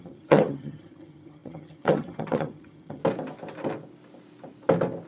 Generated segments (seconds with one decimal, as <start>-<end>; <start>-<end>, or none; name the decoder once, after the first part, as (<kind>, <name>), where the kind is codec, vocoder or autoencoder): 0.0-3.0 (vocoder, HiFi-GAN)